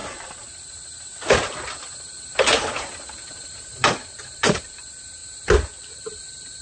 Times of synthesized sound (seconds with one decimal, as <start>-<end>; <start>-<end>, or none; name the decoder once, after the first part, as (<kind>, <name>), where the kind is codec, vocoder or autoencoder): 2.7-5.2 (vocoder, BigVGAN v2); 5.9-6.6